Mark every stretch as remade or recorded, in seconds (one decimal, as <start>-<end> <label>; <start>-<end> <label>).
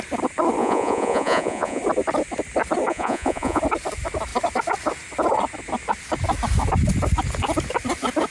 0.0-0.6 recorded; 0.6-1.8 remade; 1.8-2.9 recorded; 2.9-3.6 remade; 3.6-8.3 recorded